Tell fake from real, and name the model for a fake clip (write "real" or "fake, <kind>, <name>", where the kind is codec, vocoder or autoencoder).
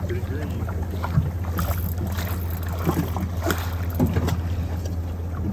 real